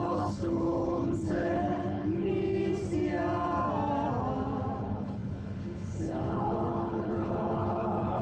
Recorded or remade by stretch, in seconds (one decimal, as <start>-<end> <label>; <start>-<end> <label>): 0.0-2.3 remade; 2.3-4.8 recorded; 4.8-8.2 remade